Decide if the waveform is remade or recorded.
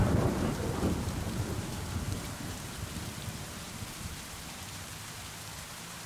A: remade